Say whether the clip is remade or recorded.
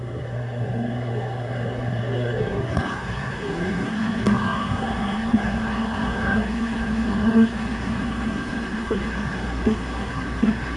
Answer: remade